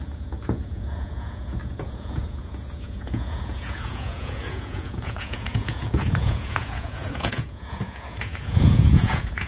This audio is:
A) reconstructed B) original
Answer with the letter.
A